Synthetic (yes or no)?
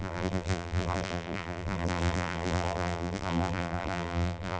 yes